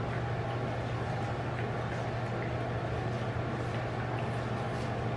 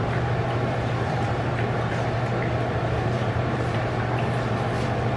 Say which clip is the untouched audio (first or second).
first